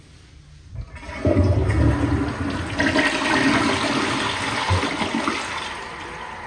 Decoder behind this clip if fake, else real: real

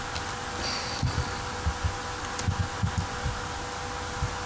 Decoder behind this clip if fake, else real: real